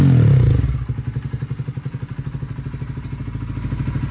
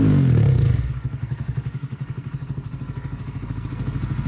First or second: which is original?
first